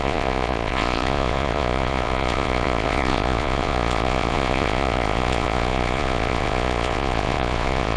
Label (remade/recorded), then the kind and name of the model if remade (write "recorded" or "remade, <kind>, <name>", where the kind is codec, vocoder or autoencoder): remade, vocoder, Vocos